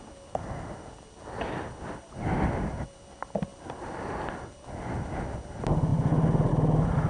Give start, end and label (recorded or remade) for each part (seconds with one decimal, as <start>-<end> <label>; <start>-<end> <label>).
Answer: 0.0-7.1 recorded